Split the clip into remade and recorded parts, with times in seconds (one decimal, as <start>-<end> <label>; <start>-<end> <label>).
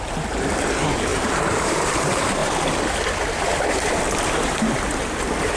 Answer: 0.0-1.1 recorded; 1.1-1.9 remade; 1.9-5.6 recorded